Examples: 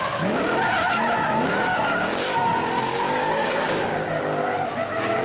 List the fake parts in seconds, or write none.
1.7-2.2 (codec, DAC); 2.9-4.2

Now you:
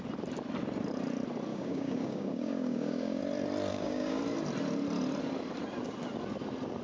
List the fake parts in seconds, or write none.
1.5-3.2 (codec, DAC); 3.7-4.2

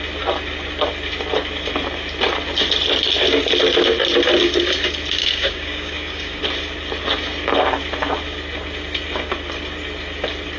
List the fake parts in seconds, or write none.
5.2-6.4 (codec, DAC)

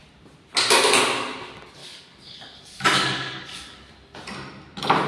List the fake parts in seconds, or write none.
1.8-3.9 (codec, DAC)

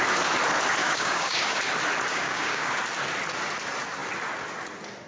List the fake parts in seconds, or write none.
0.8-1.6 (codec, DAC); 2.1-2.8

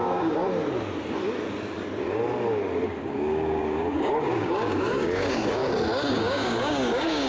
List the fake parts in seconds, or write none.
0.0-0.4 (codec, DAC); 3.1-5.6; 6.1-7.3

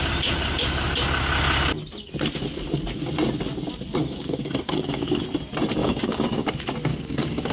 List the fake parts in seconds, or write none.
4.0-5.2 (codec, DAC); 5.8-6.5; 6.9-7.5

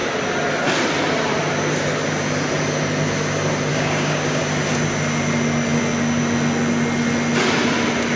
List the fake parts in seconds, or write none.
3.7-4.4 (codec, DAC)